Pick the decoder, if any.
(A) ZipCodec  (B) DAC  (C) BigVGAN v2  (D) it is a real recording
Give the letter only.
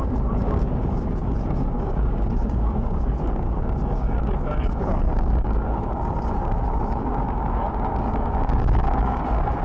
B